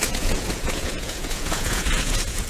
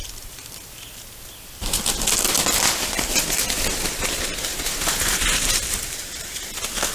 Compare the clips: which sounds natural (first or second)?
second